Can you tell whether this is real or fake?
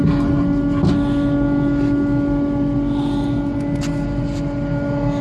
real